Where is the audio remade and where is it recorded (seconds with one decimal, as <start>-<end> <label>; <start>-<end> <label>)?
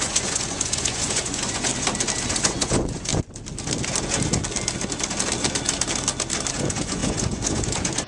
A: 0.0-1.7 remade; 1.7-2.3 recorded; 2.3-3.1 remade; 3.1-6.5 recorded; 6.5-8.1 remade